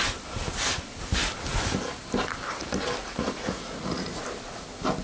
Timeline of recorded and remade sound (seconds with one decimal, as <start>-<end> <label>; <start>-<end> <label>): 0.0-3.0 recorded; 3.0-4.2 remade; 4.2-5.0 recorded